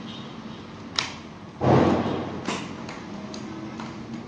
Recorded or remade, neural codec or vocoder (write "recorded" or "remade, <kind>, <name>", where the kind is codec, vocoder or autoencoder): recorded